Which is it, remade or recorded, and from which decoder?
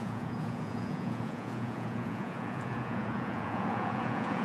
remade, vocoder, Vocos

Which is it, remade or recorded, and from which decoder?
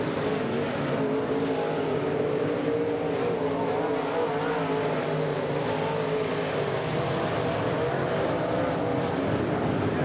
recorded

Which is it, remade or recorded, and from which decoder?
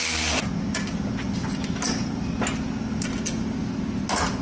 recorded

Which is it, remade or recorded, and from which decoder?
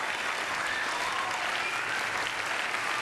recorded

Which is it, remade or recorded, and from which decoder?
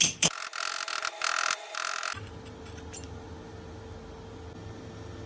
recorded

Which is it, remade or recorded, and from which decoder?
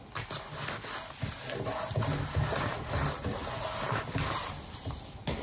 recorded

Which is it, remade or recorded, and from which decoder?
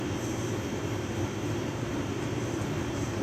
recorded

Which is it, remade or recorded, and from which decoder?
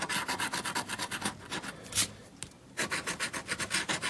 recorded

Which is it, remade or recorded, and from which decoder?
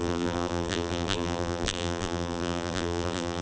remade, vocoder, BigVGAN v2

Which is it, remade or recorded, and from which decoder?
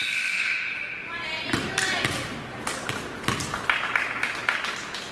recorded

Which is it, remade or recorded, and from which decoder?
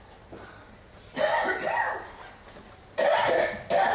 recorded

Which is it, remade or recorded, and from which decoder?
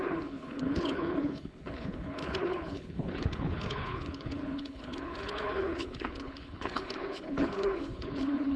remade, codec, HILCodec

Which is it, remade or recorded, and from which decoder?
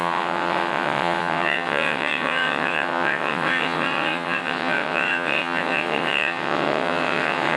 remade, vocoder, WaveNeXt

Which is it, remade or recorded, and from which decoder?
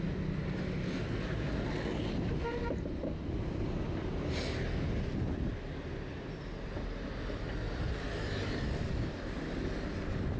recorded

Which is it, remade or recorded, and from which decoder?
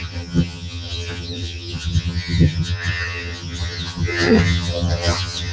remade, vocoder, HiFi-GAN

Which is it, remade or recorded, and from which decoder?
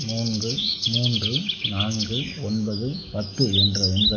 remade, autoencoder, DAC-VAE